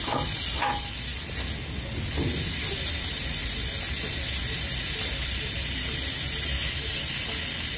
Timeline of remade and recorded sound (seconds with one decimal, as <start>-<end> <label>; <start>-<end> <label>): 0.0-7.8 recorded